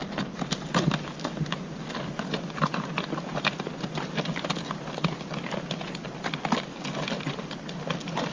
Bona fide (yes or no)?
yes